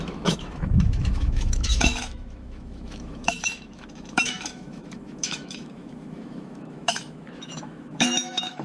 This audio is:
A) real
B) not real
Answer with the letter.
B